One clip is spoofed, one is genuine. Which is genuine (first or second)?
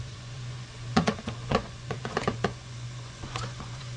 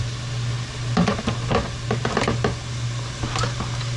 second